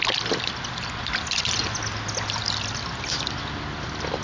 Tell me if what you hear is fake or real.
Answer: real